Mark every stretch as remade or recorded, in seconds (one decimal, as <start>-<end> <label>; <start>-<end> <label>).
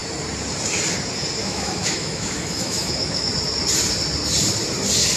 0.0-1.4 recorded; 1.4-3.3 remade; 3.3-5.2 recorded